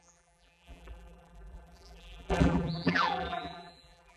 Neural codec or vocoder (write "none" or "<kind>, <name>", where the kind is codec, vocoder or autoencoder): vocoder, BigVGAN v2